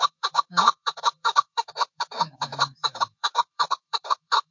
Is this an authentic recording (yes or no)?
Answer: no